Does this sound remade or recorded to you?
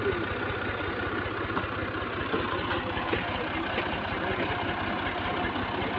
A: recorded